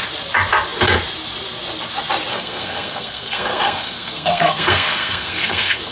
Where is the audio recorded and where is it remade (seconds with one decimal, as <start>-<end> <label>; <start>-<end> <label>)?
0.0-2.3 recorded; 2.3-5.9 remade